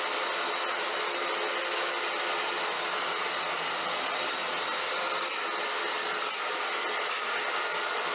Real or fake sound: real